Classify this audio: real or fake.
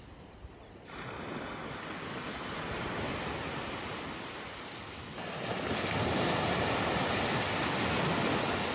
real